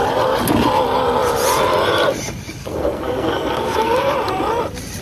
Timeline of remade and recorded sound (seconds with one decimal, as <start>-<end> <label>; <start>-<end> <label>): 0.0-2.6 recorded; 2.6-4.1 remade; 4.1-5.0 recorded

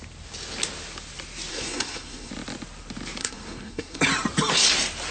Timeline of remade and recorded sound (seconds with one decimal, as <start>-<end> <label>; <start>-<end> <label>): 0.0-1.5 recorded; 1.5-2.3 remade; 2.3-3.2 recorded; 3.2-4.0 remade; 4.0-5.1 recorded

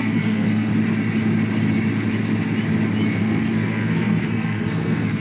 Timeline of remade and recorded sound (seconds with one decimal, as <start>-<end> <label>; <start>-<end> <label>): 0.0-0.7 remade; 0.7-3.2 recorded; 3.2-5.2 remade